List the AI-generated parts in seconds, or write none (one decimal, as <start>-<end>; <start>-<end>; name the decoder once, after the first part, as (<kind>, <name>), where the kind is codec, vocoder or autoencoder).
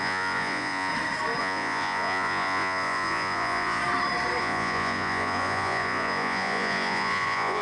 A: 0.0-0.9 (vocoder, Vocos); 1.4-3.8; 4.4-7.6